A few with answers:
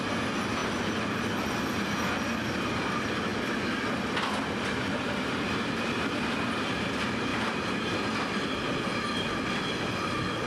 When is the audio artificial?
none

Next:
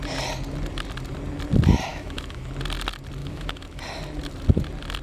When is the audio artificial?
1.9-2.5 (autoencoder, DAC-VAE); 3.2-3.8